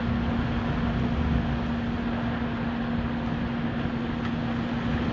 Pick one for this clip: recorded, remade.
recorded